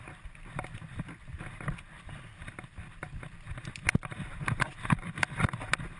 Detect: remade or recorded recorded